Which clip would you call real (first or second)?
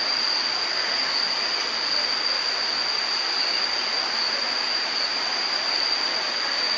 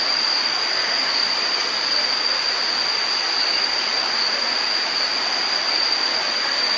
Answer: first